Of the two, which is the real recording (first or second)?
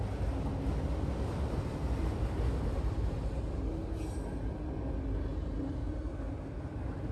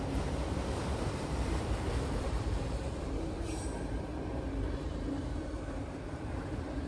first